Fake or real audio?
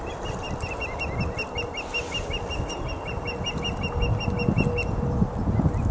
real